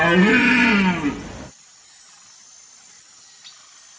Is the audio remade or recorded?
recorded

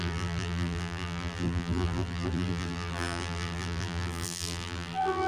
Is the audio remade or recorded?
remade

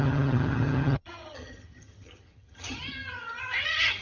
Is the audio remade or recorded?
remade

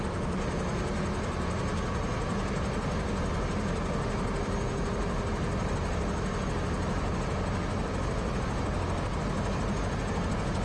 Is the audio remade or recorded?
recorded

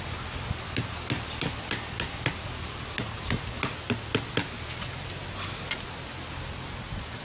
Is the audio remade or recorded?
recorded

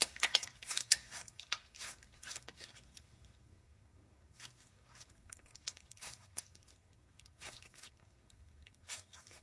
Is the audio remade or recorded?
remade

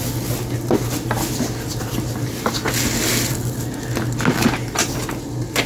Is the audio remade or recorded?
recorded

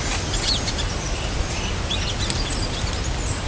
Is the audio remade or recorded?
recorded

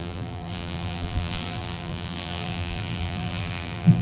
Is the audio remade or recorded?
remade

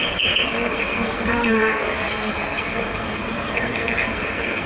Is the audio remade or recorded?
remade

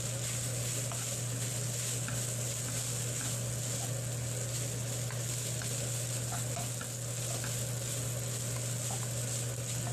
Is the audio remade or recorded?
recorded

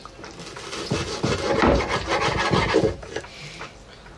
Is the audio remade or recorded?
remade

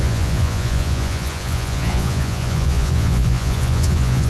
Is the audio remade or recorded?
remade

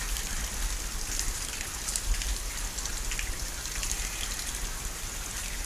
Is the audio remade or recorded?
recorded